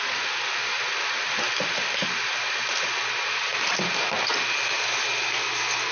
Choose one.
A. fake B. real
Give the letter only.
B